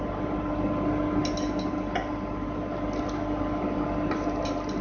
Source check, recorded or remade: recorded